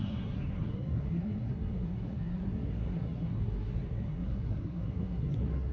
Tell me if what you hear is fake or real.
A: fake